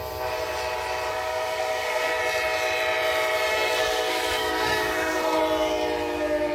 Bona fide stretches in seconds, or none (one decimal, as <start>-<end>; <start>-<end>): 0.0-1.1; 2.2-3.5; 5.4-6.5